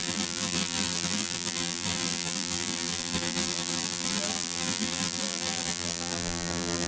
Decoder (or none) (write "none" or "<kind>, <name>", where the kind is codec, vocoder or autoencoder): vocoder, BigVGAN v2